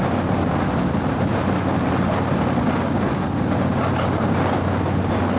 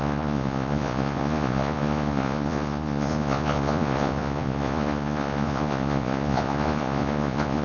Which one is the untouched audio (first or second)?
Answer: first